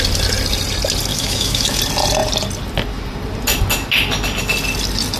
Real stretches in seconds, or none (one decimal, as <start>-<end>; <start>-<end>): 0.0-1.1; 1.8-5.2